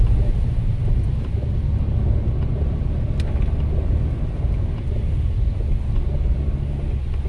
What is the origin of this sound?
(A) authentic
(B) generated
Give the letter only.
A